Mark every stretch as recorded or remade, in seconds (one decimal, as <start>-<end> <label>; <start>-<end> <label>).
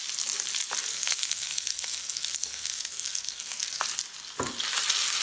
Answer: 0.0-0.9 recorded; 0.9-3.8 remade; 3.8-5.2 recorded